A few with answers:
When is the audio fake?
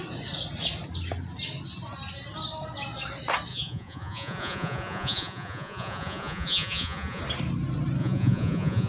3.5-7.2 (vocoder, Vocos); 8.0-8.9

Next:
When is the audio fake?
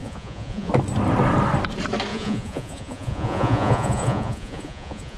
0.0-0.7 (vocoder, Vocos); 2.1-5.2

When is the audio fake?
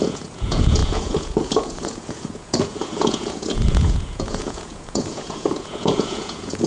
0.0-6.7 (vocoder, Vocos)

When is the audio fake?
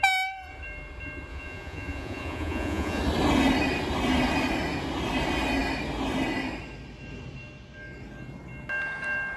1.3-3.0 (vocoder, Vocos)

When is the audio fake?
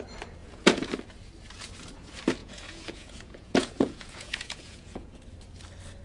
0.4-0.9 (vocoder, Vocos); 2.4-5.2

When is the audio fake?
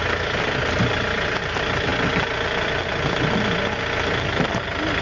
none